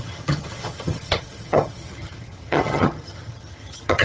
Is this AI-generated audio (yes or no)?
yes